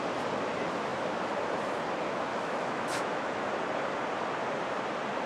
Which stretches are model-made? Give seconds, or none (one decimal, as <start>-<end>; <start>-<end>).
2.3-3.4